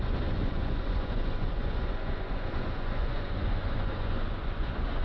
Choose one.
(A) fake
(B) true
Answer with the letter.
A